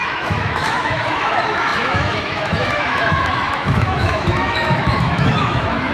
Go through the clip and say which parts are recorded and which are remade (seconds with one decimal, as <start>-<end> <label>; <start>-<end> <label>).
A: 0.0-5.9 remade